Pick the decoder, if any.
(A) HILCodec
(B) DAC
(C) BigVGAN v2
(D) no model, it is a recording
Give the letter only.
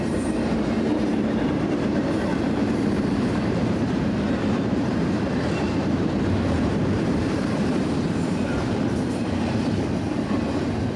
C